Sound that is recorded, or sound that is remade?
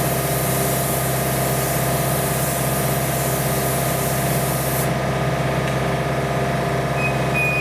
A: recorded